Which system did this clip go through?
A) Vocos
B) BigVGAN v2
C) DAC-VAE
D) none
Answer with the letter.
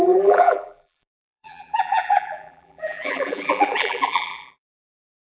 B